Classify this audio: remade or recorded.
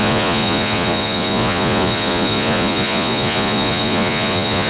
remade